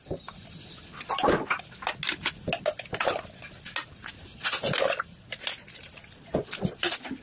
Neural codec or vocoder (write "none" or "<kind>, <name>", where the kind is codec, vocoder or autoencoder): none